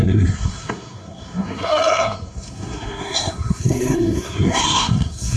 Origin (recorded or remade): remade